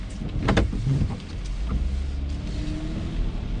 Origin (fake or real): real